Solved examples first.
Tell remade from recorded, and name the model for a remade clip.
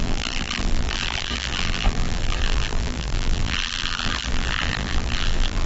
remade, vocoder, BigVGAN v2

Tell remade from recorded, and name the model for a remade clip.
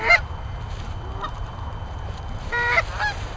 remade, vocoder, BigVGAN v2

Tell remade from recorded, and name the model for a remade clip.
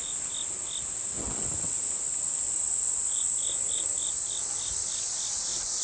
recorded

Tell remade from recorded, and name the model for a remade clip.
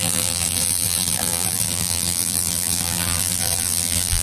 remade, vocoder, BigVGAN v2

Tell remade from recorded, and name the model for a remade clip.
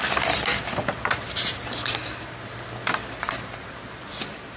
recorded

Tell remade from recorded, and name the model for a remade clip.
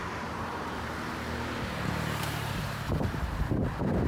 remade, vocoder, BigVGAN v2